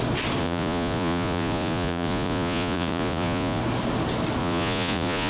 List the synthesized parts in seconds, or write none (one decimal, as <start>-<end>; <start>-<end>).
0.4-3.6; 4.4-5.3